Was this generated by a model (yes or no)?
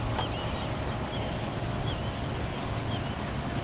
no